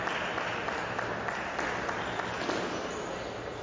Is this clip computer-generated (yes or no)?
no